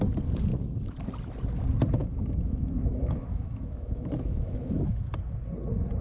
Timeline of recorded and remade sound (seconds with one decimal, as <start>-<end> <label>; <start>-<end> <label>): 0.0-0.5 recorded; 0.5-1.0 remade; 1.0-2.0 recorded; 2.0-5.1 remade; 5.1-6.0 recorded